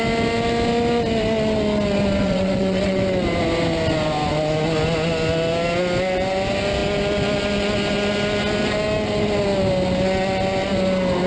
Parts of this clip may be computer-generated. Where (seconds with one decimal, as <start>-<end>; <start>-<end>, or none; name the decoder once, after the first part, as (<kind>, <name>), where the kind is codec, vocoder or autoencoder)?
2.2-3.0 (vocoder, WaveNeXt)